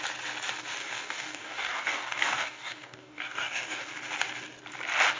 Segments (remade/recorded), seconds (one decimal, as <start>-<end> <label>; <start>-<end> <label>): 0.0-0.8 recorded; 0.8-3.9 remade; 3.9-5.2 recorded

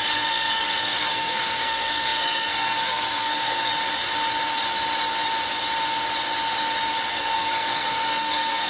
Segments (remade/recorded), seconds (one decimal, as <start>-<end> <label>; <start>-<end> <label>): 0.0-3.7 remade; 3.7-7.1 recorded; 7.1-8.7 remade

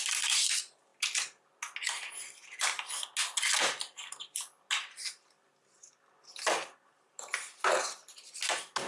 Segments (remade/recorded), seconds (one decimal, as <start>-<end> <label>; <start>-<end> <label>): 0.0-8.9 recorded

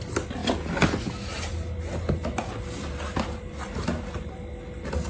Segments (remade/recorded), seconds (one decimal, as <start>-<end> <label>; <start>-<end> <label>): 0.0-5.1 recorded

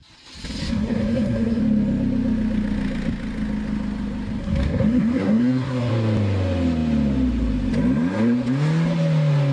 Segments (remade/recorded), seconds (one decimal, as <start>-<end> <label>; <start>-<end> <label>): 0.0-0.6 recorded; 0.6-1.6 remade; 1.6-4.4 recorded; 4.4-5.9 remade; 5.9-9.5 recorded

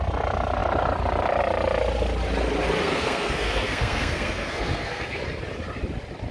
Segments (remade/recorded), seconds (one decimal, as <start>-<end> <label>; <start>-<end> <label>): 0.0-2.8 recorded; 2.8-5.2 remade; 5.2-6.3 recorded